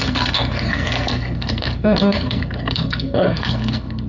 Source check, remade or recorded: remade